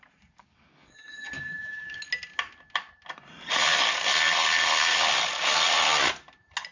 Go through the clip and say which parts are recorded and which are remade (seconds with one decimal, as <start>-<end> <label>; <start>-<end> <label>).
0.0-0.4 recorded; 0.4-2.0 remade; 2.0-6.7 recorded